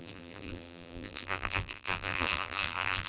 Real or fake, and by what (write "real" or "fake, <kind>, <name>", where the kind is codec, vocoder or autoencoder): fake, vocoder, BigVGAN v2